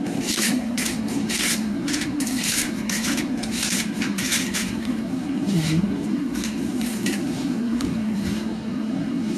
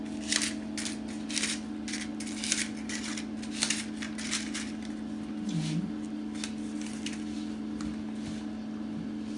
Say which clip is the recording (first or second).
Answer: second